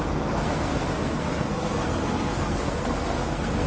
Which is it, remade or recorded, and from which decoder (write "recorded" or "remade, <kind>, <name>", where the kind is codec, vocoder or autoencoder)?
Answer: remade, codec, SNAC